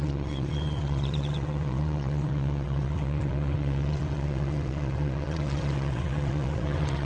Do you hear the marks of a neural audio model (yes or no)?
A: yes